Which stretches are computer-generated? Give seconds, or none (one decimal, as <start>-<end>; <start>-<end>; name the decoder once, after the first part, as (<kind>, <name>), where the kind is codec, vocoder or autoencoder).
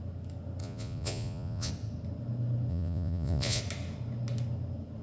0.6-1.7 (vocoder, Vocos); 2.7-3.6